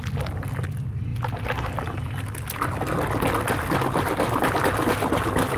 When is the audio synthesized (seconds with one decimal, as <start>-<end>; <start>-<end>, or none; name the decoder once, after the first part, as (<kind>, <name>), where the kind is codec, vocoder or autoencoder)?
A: none